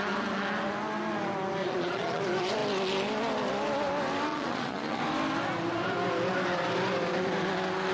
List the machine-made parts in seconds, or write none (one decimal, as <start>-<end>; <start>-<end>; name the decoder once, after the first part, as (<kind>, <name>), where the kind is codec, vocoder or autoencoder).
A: 1.6-2.2 (vocoder, Vocos); 4.3-5.0